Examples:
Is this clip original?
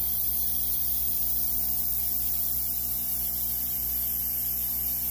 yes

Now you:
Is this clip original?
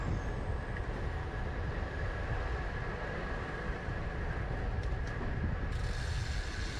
yes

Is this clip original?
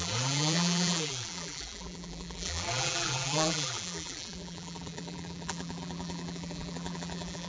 no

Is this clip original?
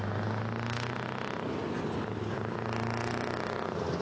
yes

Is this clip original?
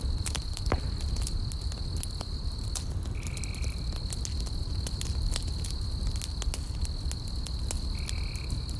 yes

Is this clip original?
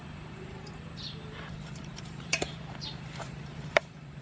no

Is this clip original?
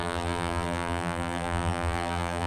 no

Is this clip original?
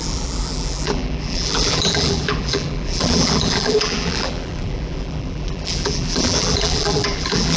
no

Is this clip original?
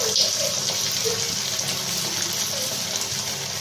yes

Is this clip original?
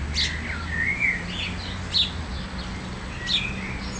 yes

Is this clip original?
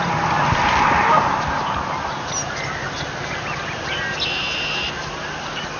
yes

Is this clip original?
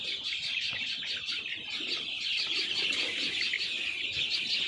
no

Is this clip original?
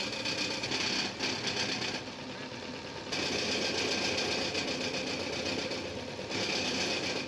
yes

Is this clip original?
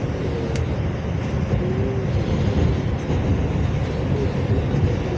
yes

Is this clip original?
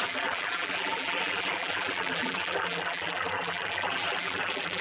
no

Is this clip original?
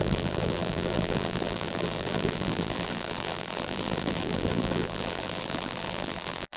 no